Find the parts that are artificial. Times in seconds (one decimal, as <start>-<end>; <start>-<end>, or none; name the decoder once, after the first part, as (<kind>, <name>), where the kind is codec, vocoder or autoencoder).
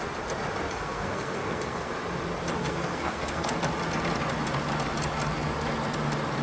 0.7-1.9 (codec, SNAC); 2.6-3.5